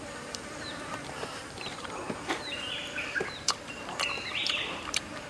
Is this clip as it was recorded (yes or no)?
no